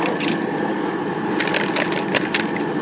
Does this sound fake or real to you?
real